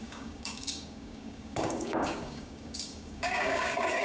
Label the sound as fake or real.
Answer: fake